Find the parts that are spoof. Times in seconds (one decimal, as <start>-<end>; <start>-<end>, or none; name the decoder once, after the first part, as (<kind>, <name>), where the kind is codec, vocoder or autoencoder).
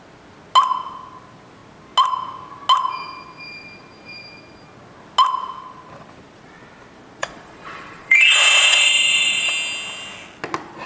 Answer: 7.2-9.5 (vocoder, Vocos)